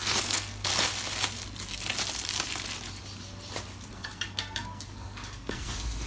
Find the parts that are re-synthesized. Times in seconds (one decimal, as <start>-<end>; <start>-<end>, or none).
0.0-0.7; 3.9-6.1